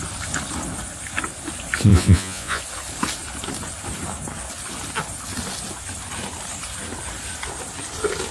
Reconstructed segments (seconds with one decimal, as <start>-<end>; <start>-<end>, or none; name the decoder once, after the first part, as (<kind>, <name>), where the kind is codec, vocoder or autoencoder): 1.9-2.6 (vocoder, Vocos)